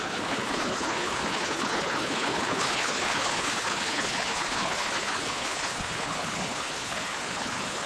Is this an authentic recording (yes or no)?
no